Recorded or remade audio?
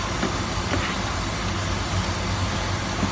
recorded